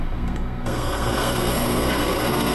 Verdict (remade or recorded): remade